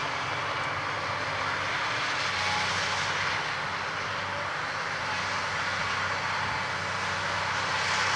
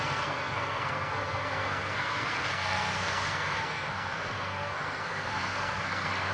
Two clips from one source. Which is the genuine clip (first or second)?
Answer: first